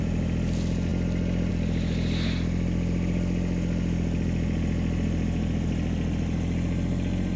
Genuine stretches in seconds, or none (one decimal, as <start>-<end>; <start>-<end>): 0.0-7.4